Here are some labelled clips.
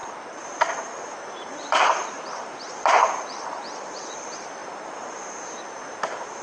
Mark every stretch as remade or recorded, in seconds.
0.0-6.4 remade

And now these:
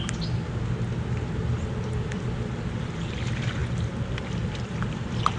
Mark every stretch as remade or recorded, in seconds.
0.0-5.4 recorded

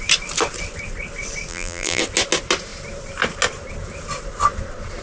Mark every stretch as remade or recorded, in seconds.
0.0-1.5 recorded; 1.5-2.0 remade; 2.0-5.0 recorded

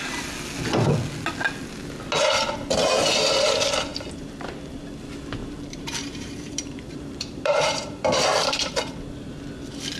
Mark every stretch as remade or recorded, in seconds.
0.0-5.4 recorded; 5.4-8.7 remade; 8.7-10.0 recorded

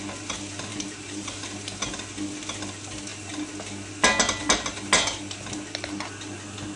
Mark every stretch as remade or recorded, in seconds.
0.0-0.7 recorded; 0.7-1.9 remade; 1.9-6.8 recorded

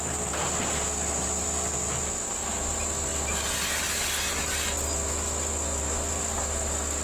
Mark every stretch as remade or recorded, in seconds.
0.0-7.0 recorded

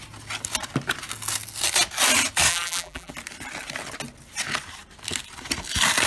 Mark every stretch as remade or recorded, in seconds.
0.0-2.5 recorded; 2.5-3.1 remade; 3.1-6.1 recorded